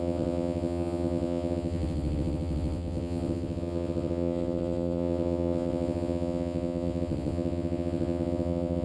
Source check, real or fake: fake